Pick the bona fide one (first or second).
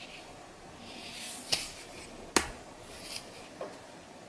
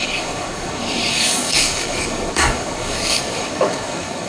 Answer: first